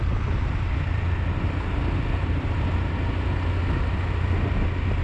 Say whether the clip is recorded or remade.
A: recorded